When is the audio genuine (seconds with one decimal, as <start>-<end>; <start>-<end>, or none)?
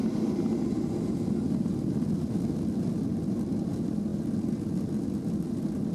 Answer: 0.0-5.9